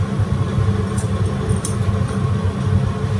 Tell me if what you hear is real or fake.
real